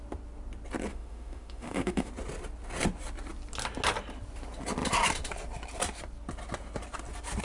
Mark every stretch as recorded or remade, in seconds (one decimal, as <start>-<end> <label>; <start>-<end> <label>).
0.0-0.9 recorded; 0.9-2.1 remade; 2.1-7.4 recorded